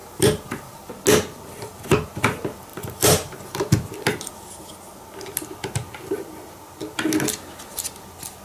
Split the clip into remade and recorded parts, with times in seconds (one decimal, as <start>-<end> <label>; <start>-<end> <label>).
0.0-0.9 remade; 0.9-2.7 recorded; 2.7-3.5 remade; 3.5-8.4 recorded